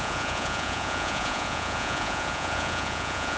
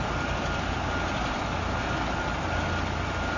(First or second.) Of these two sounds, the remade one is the first